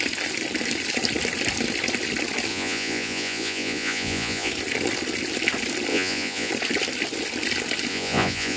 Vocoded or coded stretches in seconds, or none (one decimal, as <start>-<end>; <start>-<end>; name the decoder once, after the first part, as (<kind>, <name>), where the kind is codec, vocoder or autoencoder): 2.5-4.5 (vocoder, Vocos); 5.9-6.5; 7.9-8.6